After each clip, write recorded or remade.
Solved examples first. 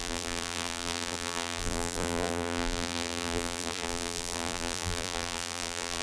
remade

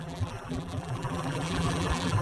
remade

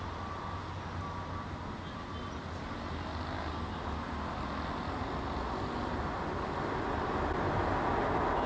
recorded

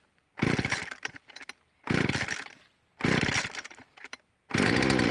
remade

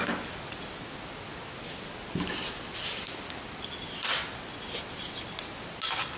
recorded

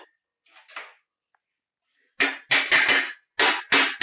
recorded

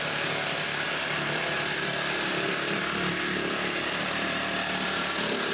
remade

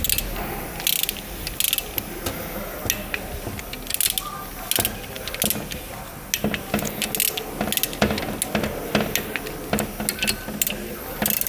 recorded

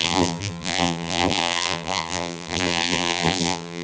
remade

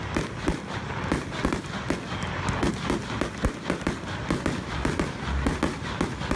recorded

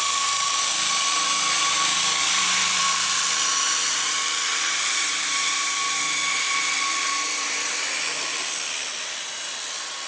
remade